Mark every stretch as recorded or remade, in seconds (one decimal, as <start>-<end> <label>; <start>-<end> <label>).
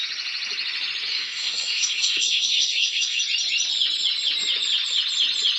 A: 0.0-1.1 recorded; 1.1-3.2 remade; 3.2-5.6 recorded